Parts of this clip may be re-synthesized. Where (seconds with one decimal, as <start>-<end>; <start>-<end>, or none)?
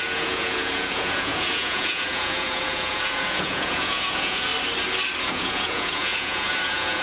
0.0-4.5; 5.2-7.0